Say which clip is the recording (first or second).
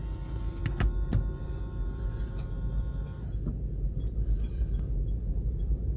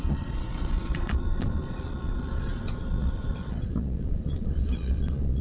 first